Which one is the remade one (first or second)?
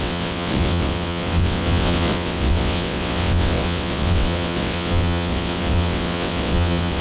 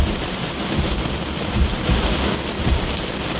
first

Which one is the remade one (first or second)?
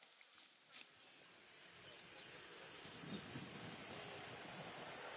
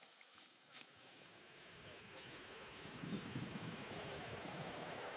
second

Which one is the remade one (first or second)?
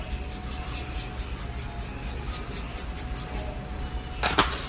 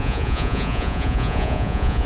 second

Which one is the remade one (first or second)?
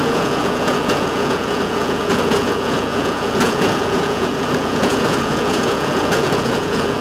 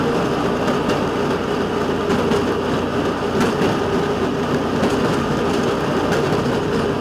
first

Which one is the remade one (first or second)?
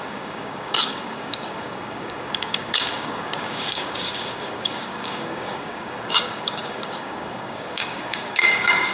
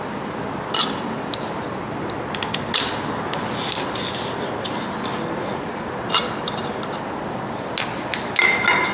first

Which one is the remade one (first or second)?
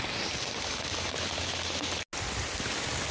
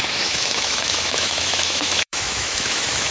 second